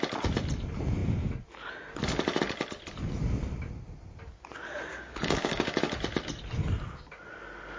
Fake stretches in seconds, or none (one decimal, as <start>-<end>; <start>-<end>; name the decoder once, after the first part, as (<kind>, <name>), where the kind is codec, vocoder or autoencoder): 4.9-5.8 (codec, DAC)